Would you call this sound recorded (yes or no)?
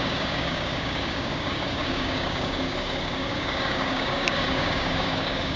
no